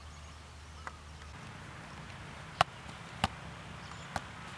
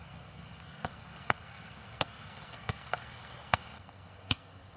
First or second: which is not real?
second